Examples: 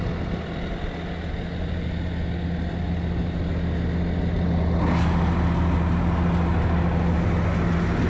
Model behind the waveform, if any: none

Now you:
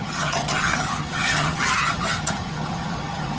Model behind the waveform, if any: vocoder, HiFi-GAN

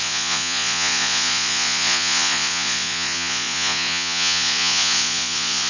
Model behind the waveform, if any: vocoder, Vocos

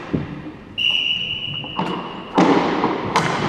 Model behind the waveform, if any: none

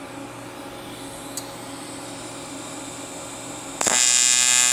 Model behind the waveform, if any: none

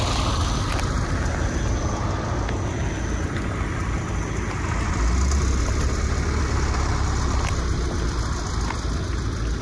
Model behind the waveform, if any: none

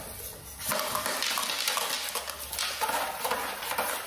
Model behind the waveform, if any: none